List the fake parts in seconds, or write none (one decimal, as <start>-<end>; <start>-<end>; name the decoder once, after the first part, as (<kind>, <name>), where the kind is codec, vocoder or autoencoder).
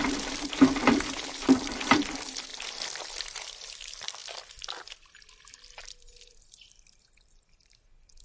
0.0-2.5 (vocoder, BigVGAN v2); 3.0-4.2; 4.8-8.2